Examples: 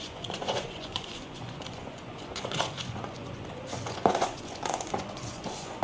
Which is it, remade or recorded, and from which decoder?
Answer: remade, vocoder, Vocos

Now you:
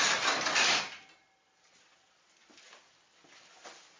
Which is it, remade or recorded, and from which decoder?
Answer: recorded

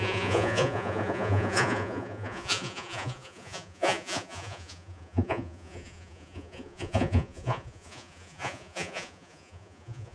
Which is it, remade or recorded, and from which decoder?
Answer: remade, vocoder, Vocos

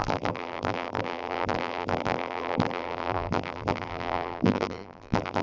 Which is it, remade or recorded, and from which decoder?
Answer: remade, vocoder, BigVGAN v2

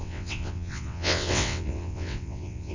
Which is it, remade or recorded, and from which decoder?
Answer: remade, vocoder, WaveNeXt